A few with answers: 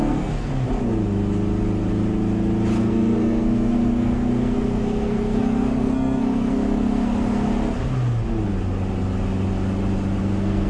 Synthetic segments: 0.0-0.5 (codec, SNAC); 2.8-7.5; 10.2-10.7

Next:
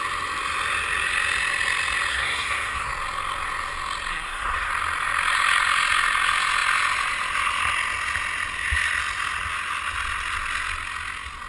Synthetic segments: 2.1-2.9 (codec, SNAC); 4.1-4.7

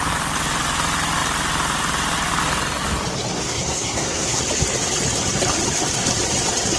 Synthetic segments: 3.3-4.4 (codec, SNAC)

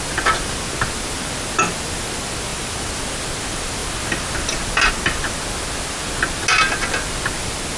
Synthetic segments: none

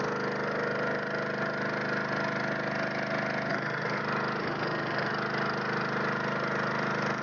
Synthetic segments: 3.5-4.0 (codec, SNAC); 4.4-5.1